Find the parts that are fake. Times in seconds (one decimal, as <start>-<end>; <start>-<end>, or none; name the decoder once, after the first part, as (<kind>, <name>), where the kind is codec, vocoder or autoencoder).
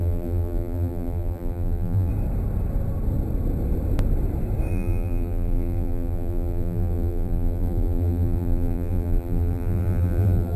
0.0-2.1 (vocoder, BigVGAN v2); 4.7-10.6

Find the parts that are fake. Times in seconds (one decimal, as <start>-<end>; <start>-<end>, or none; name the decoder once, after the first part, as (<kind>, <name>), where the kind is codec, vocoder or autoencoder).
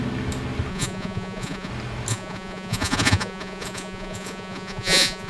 0.7-1.7 (vocoder, Vocos); 2.1-5.3